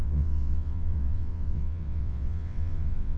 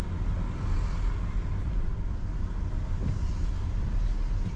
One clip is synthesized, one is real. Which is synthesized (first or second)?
first